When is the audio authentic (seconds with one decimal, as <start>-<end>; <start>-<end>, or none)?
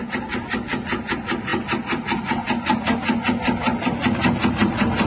0.0-5.1